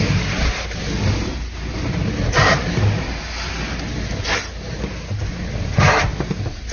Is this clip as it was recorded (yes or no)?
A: yes